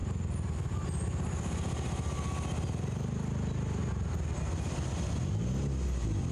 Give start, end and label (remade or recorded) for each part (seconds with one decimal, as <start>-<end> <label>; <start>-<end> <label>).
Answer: 0.0-6.3 recorded